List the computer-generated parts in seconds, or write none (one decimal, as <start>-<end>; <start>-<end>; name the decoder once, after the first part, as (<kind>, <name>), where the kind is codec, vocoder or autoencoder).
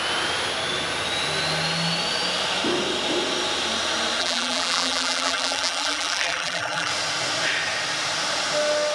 4.2-6.9 (vocoder, BigVGAN v2)